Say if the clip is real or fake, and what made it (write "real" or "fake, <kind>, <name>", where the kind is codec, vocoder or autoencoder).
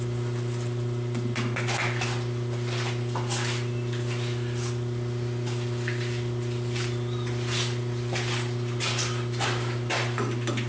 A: real